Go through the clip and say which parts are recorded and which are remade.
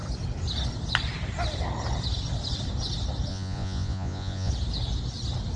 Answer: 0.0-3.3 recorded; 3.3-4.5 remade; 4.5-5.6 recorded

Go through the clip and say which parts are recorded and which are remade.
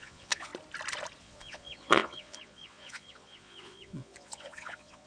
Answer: 0.0-0.5 remade; 0.5-1.2 recorded; 1.2-5.1 remade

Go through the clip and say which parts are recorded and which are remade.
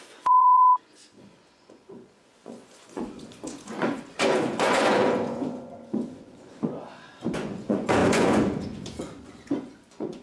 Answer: 0.0-10.2 remade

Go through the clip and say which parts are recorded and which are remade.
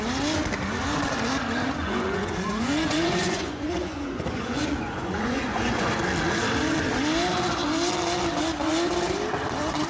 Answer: 0.0-1.8 recorded; 1.8-6.0 remade; 6.0-9.9 recorded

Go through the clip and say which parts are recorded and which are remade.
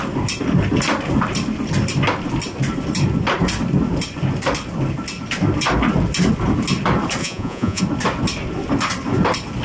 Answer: 0.0-7.2 recorded; 7.2-7.8 remade; 7.8-9.6 recorded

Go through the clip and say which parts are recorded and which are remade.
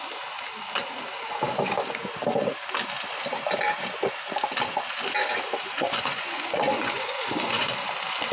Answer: 0.0-5.7 recorded; 5.7-7.7 remade; 7.7-8.3 recorded